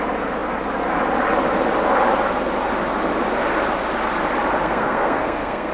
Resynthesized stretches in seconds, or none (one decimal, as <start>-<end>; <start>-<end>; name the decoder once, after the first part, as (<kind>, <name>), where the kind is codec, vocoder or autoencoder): 4.6-5.7 (codec, SNAC)